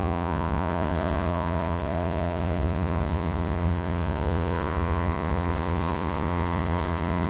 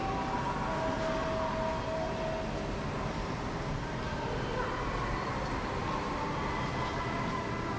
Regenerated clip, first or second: first